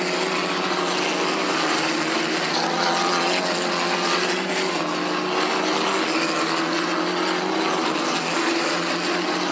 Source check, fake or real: real